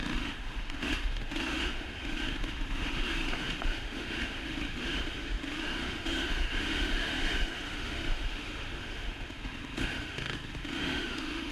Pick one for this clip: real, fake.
fake